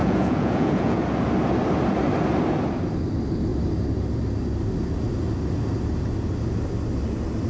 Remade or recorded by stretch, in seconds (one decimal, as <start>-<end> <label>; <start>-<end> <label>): 0.0-1.0 remade; 1.0-7.5 recorded